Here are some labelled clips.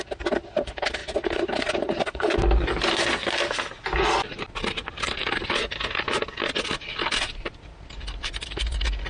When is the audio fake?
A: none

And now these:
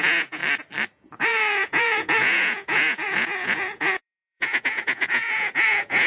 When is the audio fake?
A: 0.0-0.4 (vocoder, Vocos); 1.2-6.1